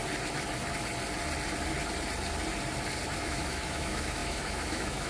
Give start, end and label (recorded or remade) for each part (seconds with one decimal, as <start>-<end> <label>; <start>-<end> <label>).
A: 0.0-3.1 recorded; 3.1-5.1 remade